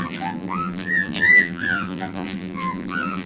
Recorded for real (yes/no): no